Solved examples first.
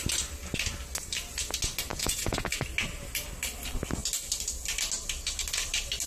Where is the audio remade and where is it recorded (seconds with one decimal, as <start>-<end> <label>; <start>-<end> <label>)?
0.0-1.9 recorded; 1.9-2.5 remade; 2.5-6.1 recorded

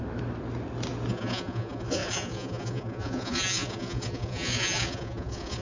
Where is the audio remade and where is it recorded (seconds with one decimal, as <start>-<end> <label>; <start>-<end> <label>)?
0.0-1.1 recorded; 1.1-5.6 remade

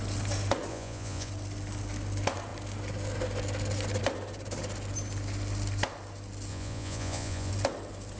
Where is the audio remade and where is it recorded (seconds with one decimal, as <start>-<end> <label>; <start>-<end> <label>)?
0.0-0.7 recorded; 0.7-1.3 remade; 1.3-6.5 recorded; 6.5-7.5 remade; 7.5-8.2 recorded

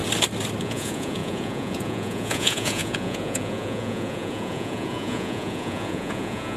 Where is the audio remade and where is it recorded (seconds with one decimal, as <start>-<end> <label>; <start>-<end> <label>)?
0.0-0.6 recorded; 0.6-6.6 remade

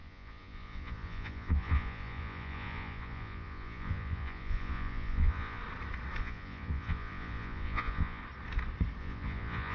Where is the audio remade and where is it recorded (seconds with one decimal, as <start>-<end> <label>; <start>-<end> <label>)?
0.0-5.6 remade; 5.6-6.2 recorded; 6.2-8.2 remade; 8.2-9.0 recorded; 9.0-9.7 remade

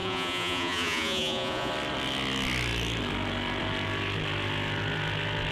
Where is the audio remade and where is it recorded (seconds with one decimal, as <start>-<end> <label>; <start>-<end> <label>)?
0.0-1.7 remade; 1.7-5.5 recorded

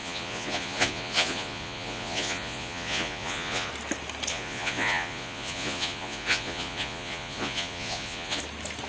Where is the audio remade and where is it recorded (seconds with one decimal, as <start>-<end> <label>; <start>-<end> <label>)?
0.0-3.7 remade; 3.7-4.3 recorded; 4.3-8.4 remade; 8.4-8.9 recorded